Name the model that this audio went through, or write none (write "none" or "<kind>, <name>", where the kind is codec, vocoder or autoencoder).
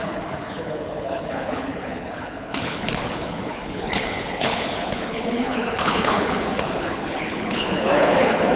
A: codec, HILCodec